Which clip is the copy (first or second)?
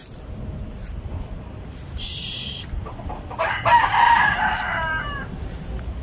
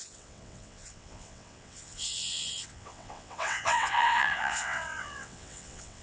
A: second